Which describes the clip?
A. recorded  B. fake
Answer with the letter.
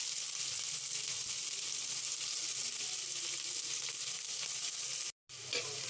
A